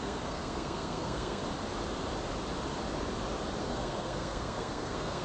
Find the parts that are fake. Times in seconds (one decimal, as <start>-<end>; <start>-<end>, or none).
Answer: 0.0-1.4; 3.6-5.2